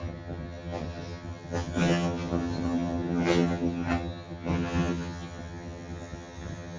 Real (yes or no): no